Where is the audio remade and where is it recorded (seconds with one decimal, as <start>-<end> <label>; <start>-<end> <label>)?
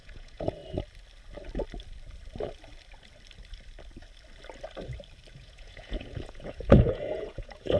0.0-0.6 remade; 0.6-5.3 recorded; 5.3-7.8 remade